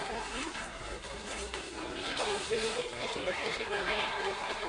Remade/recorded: remade